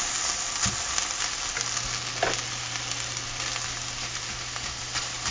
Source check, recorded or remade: recorded